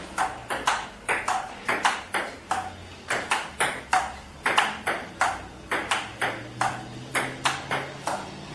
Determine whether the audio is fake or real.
real